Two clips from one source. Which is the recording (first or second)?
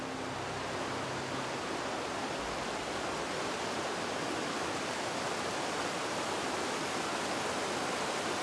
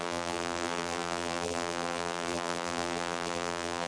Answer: first